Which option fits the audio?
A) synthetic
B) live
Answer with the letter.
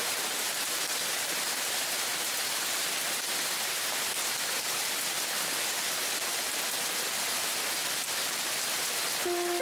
B